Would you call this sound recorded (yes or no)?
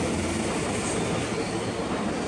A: yes